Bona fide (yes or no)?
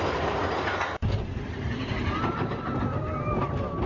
yes